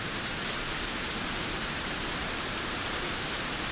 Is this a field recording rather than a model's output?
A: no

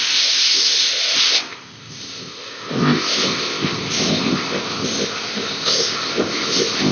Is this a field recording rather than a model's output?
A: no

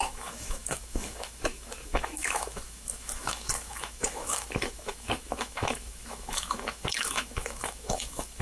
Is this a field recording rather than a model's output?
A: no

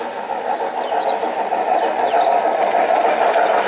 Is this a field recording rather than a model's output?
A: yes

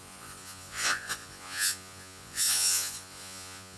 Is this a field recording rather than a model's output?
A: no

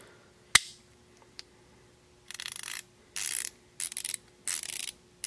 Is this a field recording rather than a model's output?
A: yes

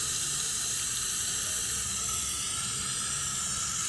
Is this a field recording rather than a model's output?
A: yes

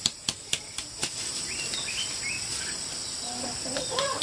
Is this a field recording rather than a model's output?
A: yes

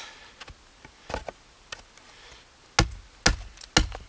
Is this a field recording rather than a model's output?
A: yes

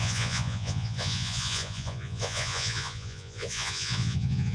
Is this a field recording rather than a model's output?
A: no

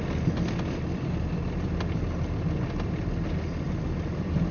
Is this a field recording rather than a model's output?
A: yes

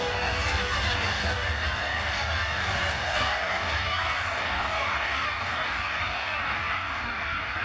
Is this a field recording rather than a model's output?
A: no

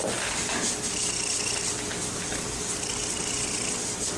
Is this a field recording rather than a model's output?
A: yes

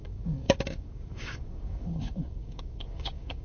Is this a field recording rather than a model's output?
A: no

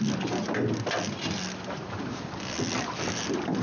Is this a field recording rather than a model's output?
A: yes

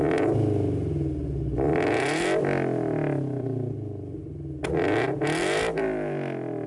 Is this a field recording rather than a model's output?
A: yes